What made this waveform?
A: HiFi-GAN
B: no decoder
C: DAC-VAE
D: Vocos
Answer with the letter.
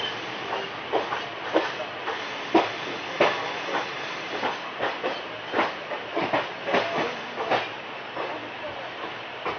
B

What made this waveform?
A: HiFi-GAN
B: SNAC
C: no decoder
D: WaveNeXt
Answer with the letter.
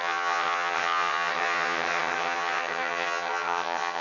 A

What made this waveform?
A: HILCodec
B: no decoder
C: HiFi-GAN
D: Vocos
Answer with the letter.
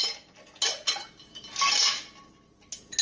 B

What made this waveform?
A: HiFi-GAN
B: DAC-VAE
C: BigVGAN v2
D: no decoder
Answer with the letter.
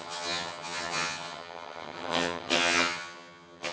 A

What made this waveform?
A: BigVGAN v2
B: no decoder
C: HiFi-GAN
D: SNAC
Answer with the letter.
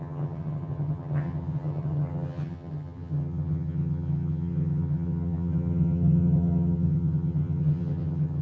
C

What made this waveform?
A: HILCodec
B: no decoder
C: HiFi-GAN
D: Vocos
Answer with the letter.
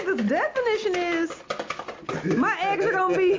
B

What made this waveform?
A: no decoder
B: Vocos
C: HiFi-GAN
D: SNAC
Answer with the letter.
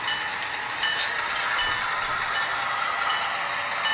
A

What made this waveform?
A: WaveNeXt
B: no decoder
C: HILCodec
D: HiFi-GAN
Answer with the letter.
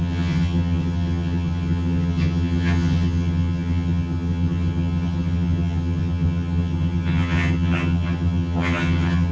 D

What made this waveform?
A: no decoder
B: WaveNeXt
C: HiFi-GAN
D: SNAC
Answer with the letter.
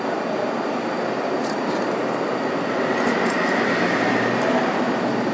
A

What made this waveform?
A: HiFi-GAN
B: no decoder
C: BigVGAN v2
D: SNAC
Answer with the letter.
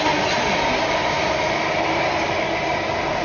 B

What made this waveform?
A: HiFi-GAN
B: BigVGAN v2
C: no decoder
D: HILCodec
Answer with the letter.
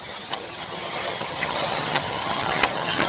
A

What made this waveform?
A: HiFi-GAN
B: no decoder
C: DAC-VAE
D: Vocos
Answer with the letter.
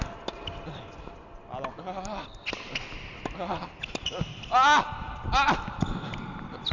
B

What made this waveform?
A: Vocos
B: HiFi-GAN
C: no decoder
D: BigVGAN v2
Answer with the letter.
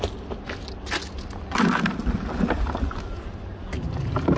C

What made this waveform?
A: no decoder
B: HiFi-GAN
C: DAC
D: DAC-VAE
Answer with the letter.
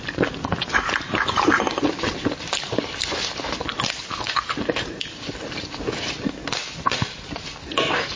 A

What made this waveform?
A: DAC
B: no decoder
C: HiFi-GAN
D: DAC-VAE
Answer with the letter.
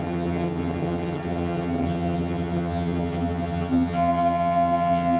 C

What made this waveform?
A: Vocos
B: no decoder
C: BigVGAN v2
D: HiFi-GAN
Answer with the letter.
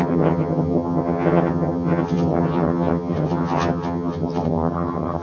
D